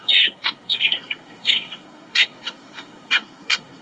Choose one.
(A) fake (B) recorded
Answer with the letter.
A